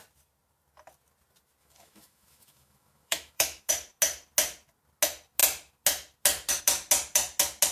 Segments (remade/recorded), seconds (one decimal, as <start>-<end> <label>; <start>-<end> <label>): 0.0-1.6 recorded; 1.6-3.7 remade; 3.7-7.7 recorded